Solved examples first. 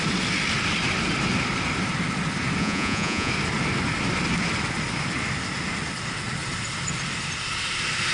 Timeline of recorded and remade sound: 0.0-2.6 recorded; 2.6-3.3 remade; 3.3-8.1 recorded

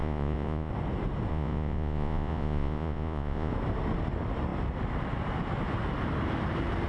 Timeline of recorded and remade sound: 0.0-0.7 remade; 0.7-1.3 recorded; 1.3-3.5 remade; 3.5-6.9 recorded

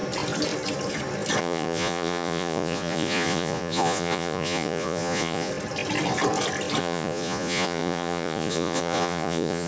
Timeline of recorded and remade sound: 0.0-1.4 recorded; 1.4-5.5 remade; 5.5-6.8 recorded; 6.8-9.7 remade

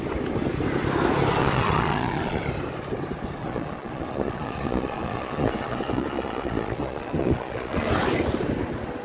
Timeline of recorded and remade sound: 0.0-1.4 recorded; 1.4-2.4 remade; 2.4-3.4 recorded; 3.4-7.9 remade; 7.9-9.0 recorded

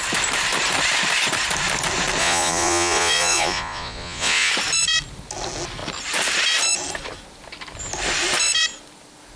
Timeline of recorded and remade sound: 0.0-2.2 recorded; 2.2-4.5 remade; 4.5-9.4 recorded

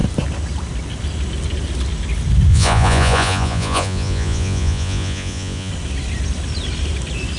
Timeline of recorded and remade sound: 0.0-2.5 recorded; 2.5-5.7 remade; 5.7-7.4 recorded

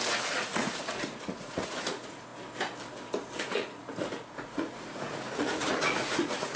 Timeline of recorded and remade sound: 0.0-2.3 remade; 2.3-3.2 recorded; 3.2-6.6 remade

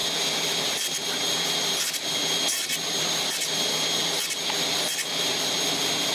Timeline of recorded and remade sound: 0.0-6.1 recorded